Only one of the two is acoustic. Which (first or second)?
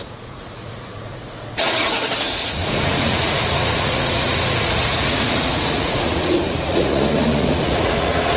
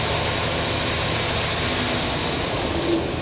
second